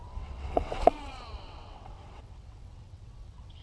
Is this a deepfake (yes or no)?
yes